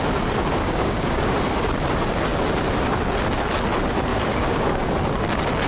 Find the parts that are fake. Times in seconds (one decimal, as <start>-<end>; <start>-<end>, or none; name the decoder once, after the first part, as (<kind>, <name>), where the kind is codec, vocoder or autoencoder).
0.6-1.3 (codec, DAC); 4.1-4.8